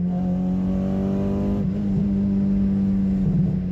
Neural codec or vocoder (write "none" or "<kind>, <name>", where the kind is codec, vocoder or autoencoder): none